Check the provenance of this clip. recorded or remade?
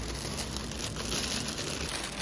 recorded